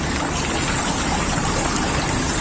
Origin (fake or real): real